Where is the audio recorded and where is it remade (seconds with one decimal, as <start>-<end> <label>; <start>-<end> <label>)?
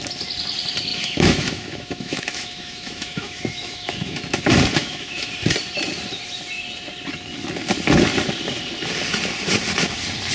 0.0-0.9 recorded; 0.9-4.2 remade; 4.2-4.8 recorded; 4.8-5.3 remade; 5.3-10.3 recorded